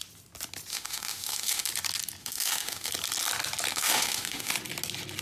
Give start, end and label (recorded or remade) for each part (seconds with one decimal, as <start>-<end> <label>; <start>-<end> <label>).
0.0-0.7 recorded; 0.7-1.7 remade; 1.7-2.2 recorded; 2.2-2.9 remade; 2.9-3.7 recorded; 3.7-4.5 remade; 4.5-5.2 recorded

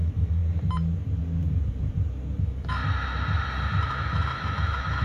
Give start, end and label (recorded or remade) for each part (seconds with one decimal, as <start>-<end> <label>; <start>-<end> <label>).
0.0-0.4 remade; 0.4-2.4 recorded; 2.4-2.8 remade; 2.8-3.9 recorded; 3.9-5.0 remade

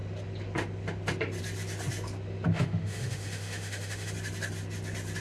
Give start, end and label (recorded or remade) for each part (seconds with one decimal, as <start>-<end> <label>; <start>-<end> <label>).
0.0-2.5 recorded; 2.5-4.1 remade; 4.1-5.2 recorded

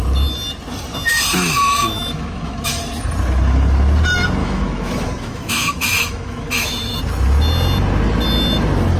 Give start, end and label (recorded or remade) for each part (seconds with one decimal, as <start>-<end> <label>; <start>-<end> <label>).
0.0-1.1 recorded; 1.1-2.8 remade; 2.8-4.4 recorded; 4.4-7.0 remade; 7.0-9.0 recorded

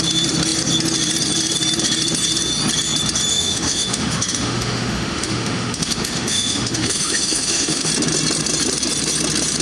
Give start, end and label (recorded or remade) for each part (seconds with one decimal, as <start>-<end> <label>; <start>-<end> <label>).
0.0-3.3 recorded; 3.3-7.9 remade; 7.9-9.6 recorded

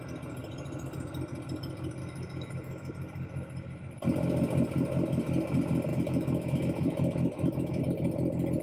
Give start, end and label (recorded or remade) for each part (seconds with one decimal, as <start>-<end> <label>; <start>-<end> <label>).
0.0-2.0 recorded; 2.0-2.9 remade; 2.9-5.9 recorded; 5.9-7.8 remade; 7.8-8.6 recorded

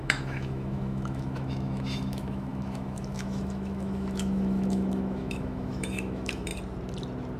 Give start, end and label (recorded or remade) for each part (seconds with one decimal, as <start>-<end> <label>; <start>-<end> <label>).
0.0-6.5 remade; 6.5-7.4 recorded

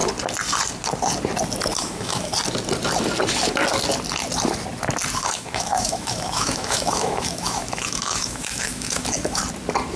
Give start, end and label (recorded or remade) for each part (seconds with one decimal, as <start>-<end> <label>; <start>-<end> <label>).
0.0-1.8 recorded; 1.8-2.3 remade; 2.3-5.2 recorded; 5.2-9.4 remade; 9.4-10.0 recorded